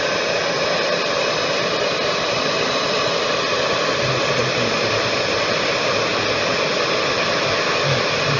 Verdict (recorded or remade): recorded